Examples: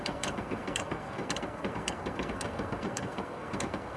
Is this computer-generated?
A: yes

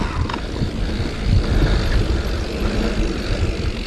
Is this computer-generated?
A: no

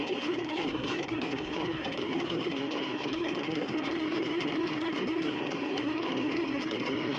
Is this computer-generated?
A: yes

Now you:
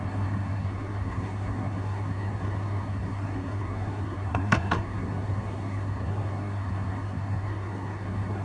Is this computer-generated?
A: yes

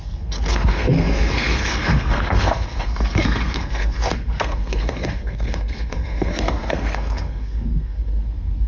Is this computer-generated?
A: yes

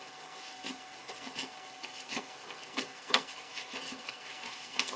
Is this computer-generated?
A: yes